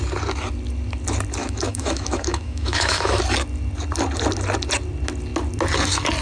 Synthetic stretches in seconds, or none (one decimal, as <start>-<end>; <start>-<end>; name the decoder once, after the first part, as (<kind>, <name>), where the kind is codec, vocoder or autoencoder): 1.4-3.2 (autoencoder, DAC-VAE)